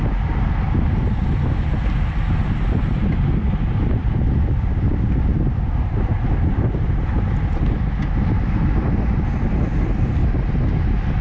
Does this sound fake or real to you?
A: real